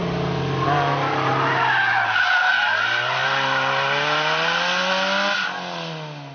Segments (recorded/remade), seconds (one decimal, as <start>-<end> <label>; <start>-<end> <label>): 0.0-6.3 recorded